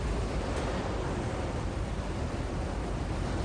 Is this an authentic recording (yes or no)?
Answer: yes